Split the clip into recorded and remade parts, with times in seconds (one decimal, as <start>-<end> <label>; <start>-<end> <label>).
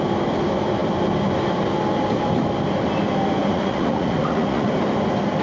0.0-3.5 recorded; 3.5-4.7 remade; 4.7-5.4 recorded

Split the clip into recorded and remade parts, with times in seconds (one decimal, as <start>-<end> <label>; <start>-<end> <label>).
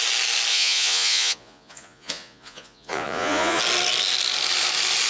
0.0-0.5 recorded; 0.5-3.6 remade; 3.6-5.1 recorded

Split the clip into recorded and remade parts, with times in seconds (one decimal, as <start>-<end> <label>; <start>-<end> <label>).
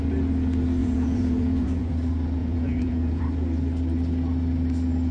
0.0-0.8 recorded; 0.8-1.9 remade; 1.9-2.4 recorded; 2.4-3.2 remade; 3.2-5.1 recorded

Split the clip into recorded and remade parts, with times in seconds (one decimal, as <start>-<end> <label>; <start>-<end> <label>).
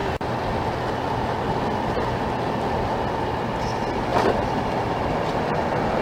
0.0-6.0 recorded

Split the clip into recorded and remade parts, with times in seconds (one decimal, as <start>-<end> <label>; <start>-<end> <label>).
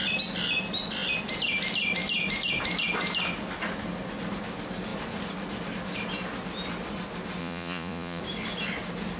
0.0-7.4 recorded; 7.4-8.2 remade; 8.2-9.2 recorded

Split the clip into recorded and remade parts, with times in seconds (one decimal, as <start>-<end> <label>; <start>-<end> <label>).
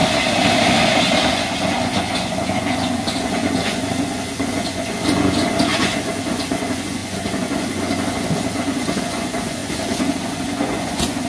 0.0-1.3 recorded; 1.3-11.3 remade